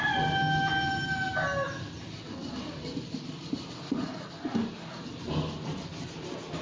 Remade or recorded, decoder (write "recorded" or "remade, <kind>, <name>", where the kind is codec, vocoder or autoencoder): recorded